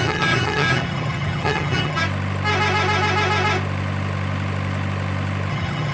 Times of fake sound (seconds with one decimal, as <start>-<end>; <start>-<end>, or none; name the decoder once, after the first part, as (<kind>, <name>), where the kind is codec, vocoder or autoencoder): 0.0-2.0 (vocoder, HiFi-GAN); 5.5-5.9